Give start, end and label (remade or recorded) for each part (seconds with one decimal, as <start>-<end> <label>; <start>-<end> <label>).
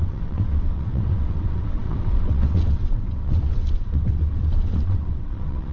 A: 0.0-5.7 remade